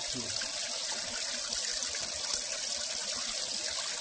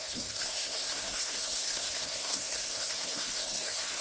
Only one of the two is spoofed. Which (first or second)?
second